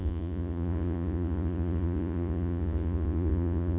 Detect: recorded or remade remade